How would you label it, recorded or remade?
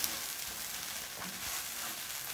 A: recorded